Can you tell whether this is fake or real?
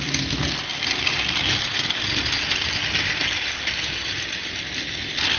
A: real